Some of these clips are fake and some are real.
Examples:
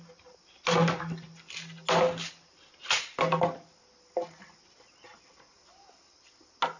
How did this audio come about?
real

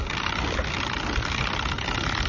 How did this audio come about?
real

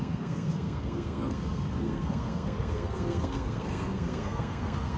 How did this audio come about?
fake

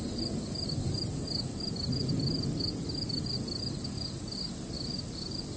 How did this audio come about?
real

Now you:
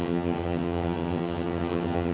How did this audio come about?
fake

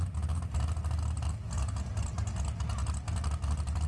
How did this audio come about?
real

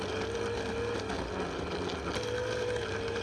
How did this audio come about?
real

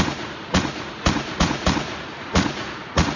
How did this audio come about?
fake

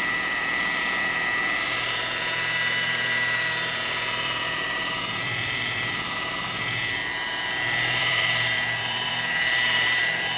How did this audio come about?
fake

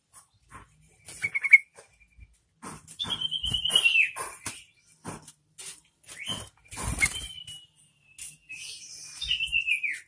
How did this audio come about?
real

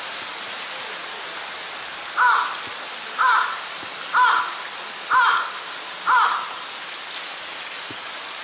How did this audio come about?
real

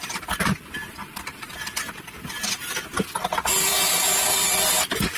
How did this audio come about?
real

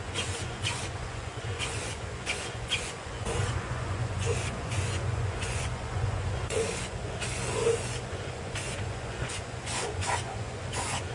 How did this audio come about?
fake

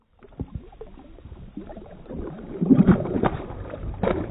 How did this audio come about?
fake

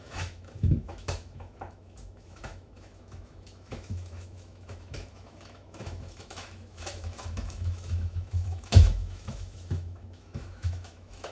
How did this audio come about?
fake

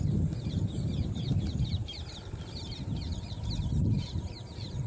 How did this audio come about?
fake